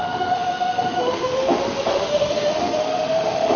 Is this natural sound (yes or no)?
no